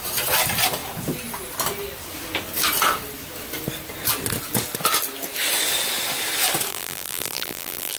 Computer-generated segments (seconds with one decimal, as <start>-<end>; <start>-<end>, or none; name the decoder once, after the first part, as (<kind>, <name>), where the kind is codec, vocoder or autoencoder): 6.7-8.0 (vocoder, BigVGAN v2)